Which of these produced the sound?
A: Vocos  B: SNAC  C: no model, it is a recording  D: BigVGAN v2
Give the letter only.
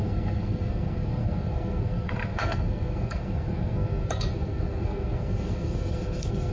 B